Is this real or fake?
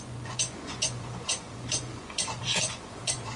fake